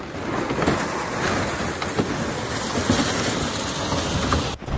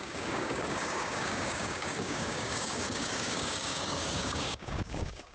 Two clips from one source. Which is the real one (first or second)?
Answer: first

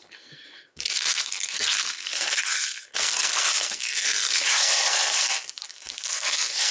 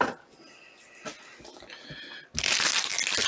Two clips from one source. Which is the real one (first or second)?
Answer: second